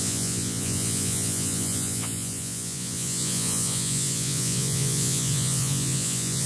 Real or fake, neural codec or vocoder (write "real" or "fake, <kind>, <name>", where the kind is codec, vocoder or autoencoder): fake, vocoder, Vocos